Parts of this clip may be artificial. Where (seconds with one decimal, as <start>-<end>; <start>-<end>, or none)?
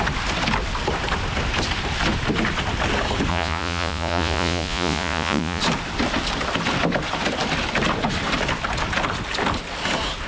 3.3-5.6